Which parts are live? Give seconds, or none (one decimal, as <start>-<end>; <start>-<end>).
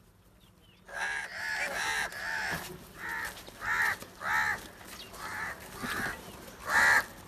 0.0-7.3